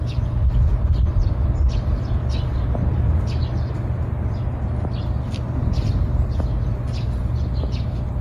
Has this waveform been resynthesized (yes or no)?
no